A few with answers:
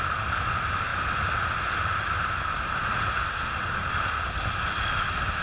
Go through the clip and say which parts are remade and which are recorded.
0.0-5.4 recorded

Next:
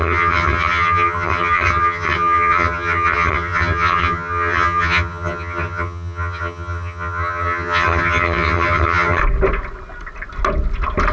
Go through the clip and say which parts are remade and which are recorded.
0.0-9.2 remade; 9.2-11.1 recorded

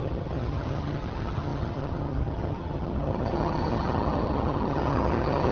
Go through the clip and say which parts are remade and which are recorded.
0.0-5.5 remade

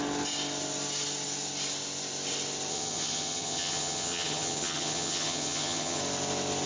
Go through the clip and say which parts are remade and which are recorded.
0.0-2.7 recorded; 2.7-6.0 remade; 6.0-6.7 recorded

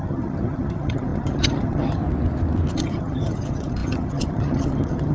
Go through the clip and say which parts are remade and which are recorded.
0.0-2.0 remade; 2.0-2.7 recorded; 2.7-5.1 remade

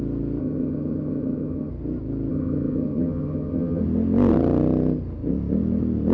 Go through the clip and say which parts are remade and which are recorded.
0.0-0.4 recorded; 0.4-1.7 remade; 1.7-2.3 recorded; 2.3-3.8 remade; 3.8-6.1 recorded

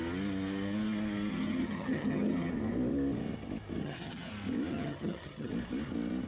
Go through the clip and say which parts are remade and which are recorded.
0.0-1.3 recorded; 1.3-2.5 remade; 2.5-3.8 recorded; 3.8-4.3 remade; 4.3-4.7 recorded; 4.7-5.5 remade; 5.5-6.3 recorded

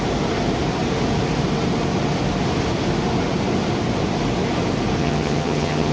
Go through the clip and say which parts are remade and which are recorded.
0.0-5.0 recorded; 5.0-5.9 remade